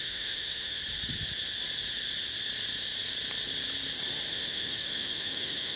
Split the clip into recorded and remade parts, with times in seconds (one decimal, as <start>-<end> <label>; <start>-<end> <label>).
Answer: 0.0-0.8 remade; 0.8-4.3 recorded; 4.3-5.8 remade